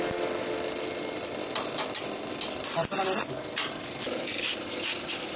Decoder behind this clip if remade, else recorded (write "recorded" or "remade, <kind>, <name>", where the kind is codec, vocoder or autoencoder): recorded